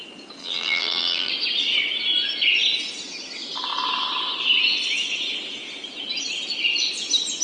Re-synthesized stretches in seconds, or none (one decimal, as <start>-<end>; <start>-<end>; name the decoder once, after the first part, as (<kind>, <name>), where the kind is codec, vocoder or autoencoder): 0.4-1.3 (vocoder, BigVGAN v2)